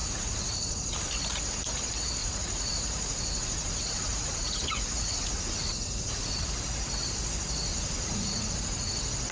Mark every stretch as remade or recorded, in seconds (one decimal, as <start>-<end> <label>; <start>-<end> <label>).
0.0-1.1 remade; 1.1-2.2 recorded; 2.2-6.5 remade; 6.5-7.7 recorded; 7.7-8.5 remade; 8.5-9.3 recorded